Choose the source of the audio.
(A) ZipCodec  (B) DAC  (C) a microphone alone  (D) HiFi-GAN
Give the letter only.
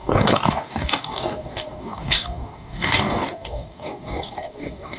B